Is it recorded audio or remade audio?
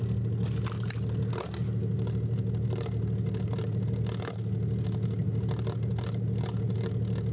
recorded